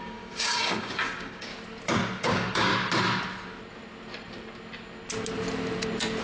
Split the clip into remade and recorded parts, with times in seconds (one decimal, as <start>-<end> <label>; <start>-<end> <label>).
0.0-1.5 remade; 1.5-2.2 recorded; 2.2-2.7 remade; 2.7-6.2 recorded